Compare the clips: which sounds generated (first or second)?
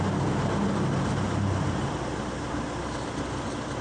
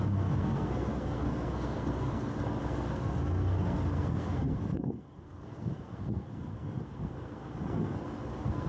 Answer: second